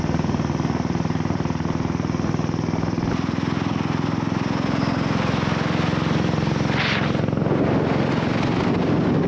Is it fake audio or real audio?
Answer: real